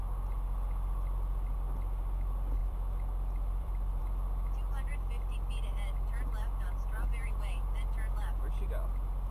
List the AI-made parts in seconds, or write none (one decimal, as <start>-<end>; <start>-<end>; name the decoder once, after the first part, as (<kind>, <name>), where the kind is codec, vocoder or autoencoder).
2.6-4.0 (vocoder, BigVGAN v2)